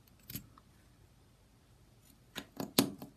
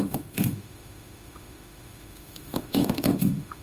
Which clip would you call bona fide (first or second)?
first